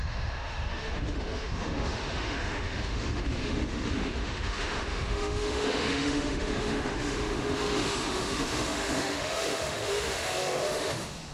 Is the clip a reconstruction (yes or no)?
yes